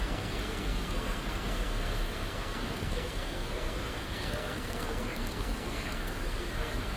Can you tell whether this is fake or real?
fake